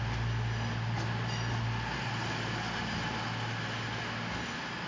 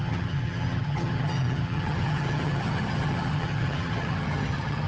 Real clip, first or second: first